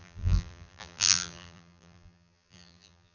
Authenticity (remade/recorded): remade